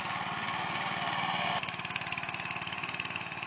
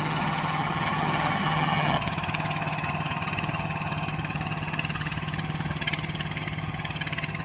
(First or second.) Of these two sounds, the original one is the first